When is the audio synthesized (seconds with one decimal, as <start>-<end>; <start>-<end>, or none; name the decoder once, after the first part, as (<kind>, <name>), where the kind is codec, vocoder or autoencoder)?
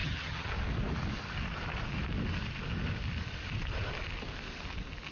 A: 0.0-0.5 (vocoder, HiFi-GAN)